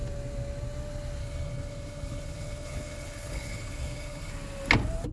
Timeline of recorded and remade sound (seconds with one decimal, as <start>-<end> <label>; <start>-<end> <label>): 0.0-1.2 recorded; 1.2-4.3 remade; 4.3-5.1 recorded